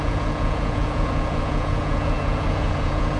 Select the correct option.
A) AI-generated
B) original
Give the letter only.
A